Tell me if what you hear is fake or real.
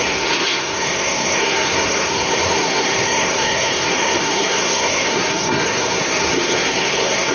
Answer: fake